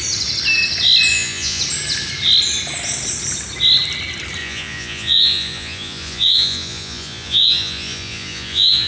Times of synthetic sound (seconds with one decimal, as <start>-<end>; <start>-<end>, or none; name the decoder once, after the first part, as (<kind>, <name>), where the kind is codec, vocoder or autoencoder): 1.1-1.6 (vocoder, Vocos); 4.4-8.9